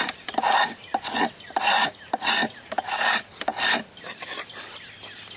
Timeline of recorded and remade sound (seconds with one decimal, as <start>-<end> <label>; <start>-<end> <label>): 0.0-5.4 recorded